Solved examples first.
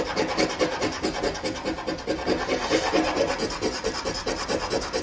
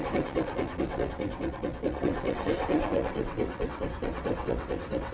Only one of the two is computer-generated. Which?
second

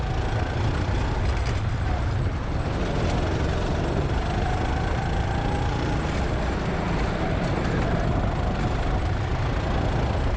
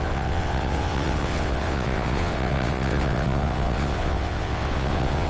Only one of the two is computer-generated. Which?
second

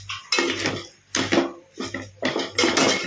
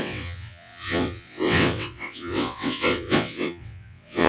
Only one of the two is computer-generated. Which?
second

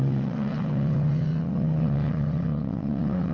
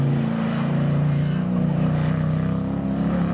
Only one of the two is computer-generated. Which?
first